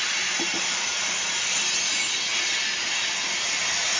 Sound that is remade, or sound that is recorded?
recorded